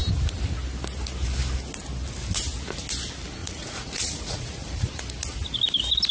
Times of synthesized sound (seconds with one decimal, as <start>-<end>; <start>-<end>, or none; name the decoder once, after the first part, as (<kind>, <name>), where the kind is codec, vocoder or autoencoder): 3.4-5.0 (vocoder, Vocos)